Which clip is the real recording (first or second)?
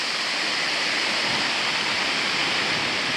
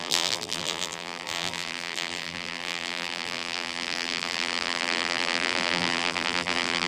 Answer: first